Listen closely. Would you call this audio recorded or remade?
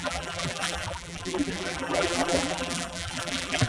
remade